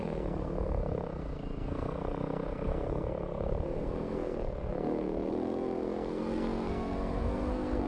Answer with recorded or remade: remade